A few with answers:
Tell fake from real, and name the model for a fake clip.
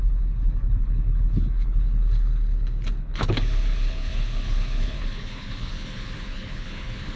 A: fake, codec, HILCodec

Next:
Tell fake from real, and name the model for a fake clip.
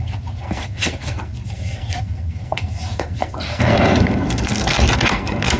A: fake, codec, SNAC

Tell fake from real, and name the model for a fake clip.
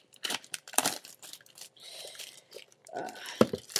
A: fake, vocoder, BigVGAN v2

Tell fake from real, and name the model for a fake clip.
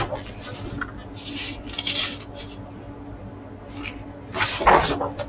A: real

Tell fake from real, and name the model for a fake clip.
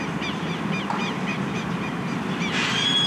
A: real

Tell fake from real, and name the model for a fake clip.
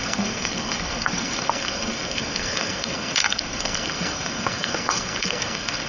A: fake, codec, SNAC